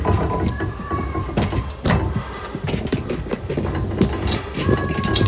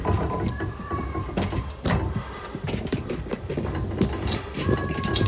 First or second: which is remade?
second